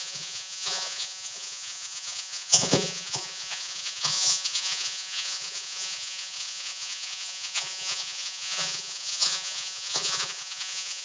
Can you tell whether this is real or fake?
fake